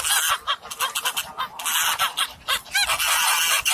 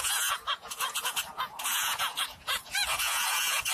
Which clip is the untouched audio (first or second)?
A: first